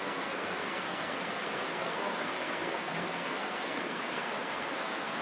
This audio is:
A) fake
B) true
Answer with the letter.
A